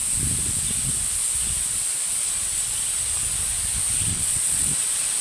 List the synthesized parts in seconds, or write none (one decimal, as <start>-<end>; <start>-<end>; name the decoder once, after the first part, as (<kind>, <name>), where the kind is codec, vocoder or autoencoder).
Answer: 4.1-4.7 (vocoder, Vocos)